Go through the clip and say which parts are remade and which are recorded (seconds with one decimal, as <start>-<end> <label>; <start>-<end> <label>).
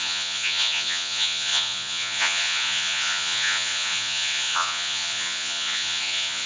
0.0-6.5 remade